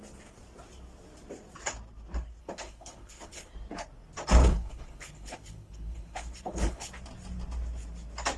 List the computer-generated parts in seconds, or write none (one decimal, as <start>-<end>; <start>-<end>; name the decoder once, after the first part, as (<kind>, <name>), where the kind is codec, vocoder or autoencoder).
2.4-3.5 (codec, HILCodec); 4.4-6.9